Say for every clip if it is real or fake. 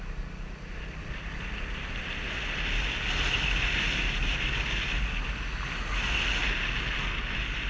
real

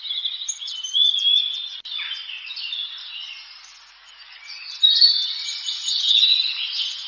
real